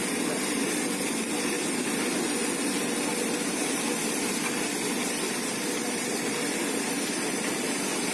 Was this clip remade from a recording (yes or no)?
yes